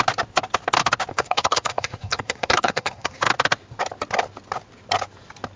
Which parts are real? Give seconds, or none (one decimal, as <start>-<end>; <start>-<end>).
0.0-1.1; 3.2-5.6